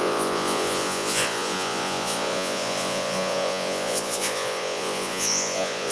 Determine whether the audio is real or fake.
fake